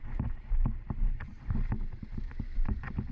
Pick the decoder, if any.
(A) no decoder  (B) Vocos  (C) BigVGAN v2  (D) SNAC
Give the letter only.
C